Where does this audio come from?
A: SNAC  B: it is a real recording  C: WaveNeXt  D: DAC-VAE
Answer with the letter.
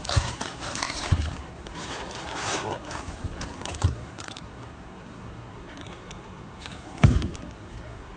A